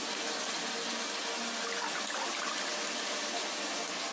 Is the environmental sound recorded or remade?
recorded